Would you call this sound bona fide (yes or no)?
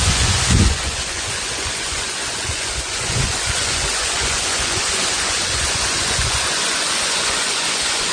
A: no